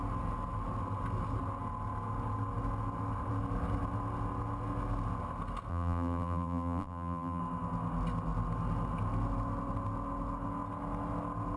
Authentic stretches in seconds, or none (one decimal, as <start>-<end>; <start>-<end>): 0.0-5.7; 7.4-11.6